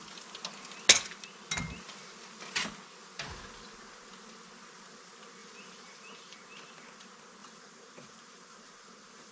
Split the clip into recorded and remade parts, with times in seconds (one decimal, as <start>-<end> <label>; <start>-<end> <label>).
0.0-5.4 recorded; 5.4-6.4 remade; 6.4-7.4 recorded; 7.4-9.3 remade